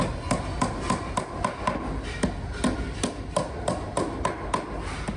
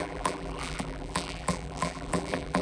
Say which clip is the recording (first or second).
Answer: first